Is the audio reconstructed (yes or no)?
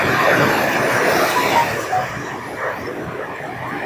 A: no